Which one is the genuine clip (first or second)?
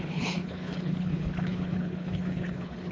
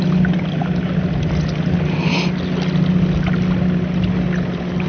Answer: second